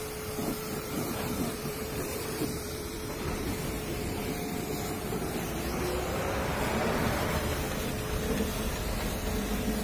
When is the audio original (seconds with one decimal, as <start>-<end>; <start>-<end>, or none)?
0.0-0.4; 4.7-6.5; 7.5-9.8